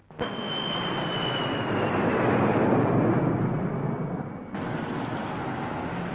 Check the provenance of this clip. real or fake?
real